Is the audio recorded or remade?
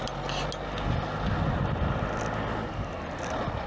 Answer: recorded